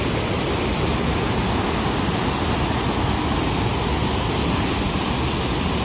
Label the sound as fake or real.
real